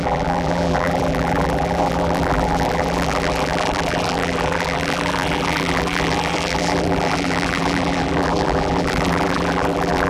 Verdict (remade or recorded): remade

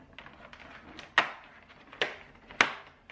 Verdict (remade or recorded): recorded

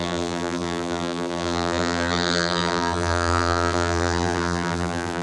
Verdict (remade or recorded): remade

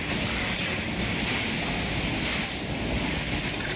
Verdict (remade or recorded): recorded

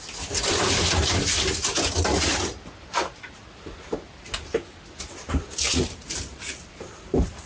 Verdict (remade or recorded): recorded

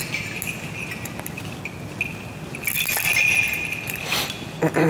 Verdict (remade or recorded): recorded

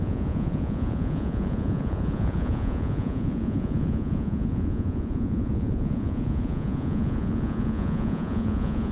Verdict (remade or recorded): remade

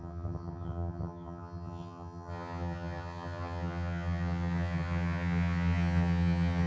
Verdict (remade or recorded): remade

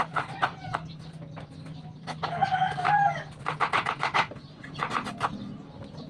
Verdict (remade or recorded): recorded